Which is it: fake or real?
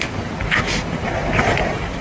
fake